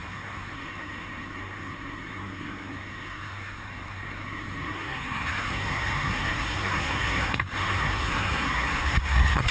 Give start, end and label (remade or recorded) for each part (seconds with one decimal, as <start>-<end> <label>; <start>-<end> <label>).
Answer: 0.0-9.5 remade